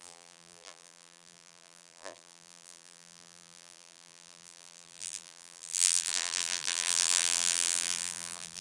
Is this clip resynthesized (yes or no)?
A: yes